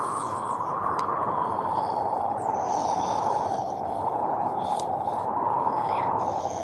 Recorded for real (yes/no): no